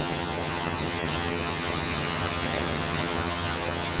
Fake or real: fake